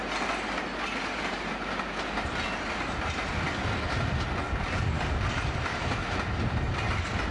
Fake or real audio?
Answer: real